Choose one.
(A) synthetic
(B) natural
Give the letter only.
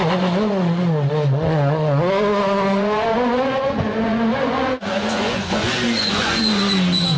A